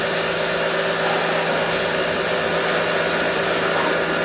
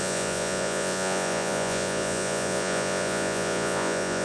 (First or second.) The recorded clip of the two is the first